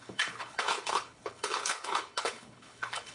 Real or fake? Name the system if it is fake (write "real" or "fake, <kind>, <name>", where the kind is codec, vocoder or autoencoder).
fake, codec, HILCodec